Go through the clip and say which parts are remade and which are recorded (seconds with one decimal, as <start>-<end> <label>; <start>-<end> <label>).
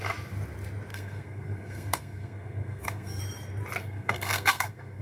0.0-0.9 recorded; 0.9-3.2 remade; 3.2-3.8 recorded; 3.8-5.0 remade